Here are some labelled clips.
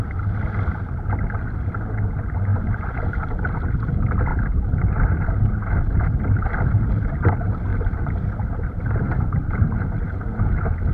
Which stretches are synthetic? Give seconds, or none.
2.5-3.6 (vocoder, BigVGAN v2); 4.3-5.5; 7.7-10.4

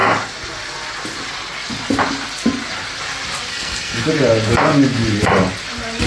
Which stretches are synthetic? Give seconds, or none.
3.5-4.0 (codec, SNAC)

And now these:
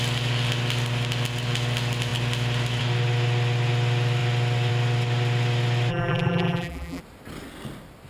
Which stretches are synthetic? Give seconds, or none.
5.9-7.0 (vocoder, BigVGAN v2)

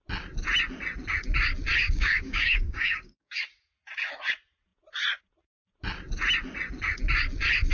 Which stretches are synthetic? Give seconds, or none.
1.8-3.3 (codec, DAC)

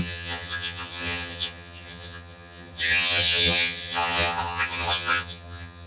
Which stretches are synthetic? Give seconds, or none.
0.0-5.9 (vocoder, HiFi-GAN)